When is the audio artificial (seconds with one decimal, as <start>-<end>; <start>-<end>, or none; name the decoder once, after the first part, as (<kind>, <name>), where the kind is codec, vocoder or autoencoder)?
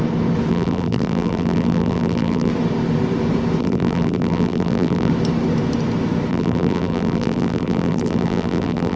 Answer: 0.5-2.5 (vocoder, BigVGAN v2); 3.6-5.1; 6.3-9.0